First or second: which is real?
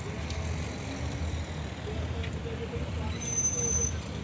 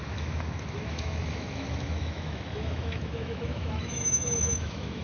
first